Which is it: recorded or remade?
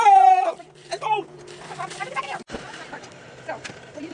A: remade